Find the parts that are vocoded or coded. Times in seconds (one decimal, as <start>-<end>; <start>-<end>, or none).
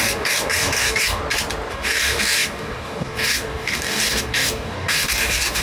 0.0-1.2; 1.7-5.6